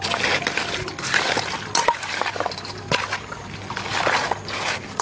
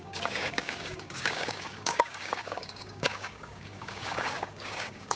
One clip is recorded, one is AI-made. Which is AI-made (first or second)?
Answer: second